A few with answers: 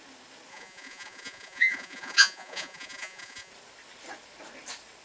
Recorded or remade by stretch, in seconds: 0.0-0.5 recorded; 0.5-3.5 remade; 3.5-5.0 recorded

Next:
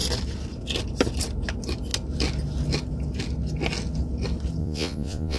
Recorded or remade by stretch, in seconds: 0.0-4.6 recorded; 4.6-5.4 remade

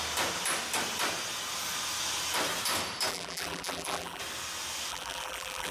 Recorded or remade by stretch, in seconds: 0.0-3.1 recorded; 3.1-4.2 remade; 4.2-4.9 recorded; 4.9-5.7 remade